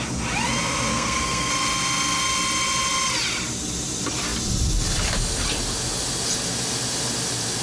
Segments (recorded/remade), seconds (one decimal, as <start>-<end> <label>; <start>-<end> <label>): 0.0-0.9 recorded; 0.9-1.5 remade; 1.5-7.6 recorded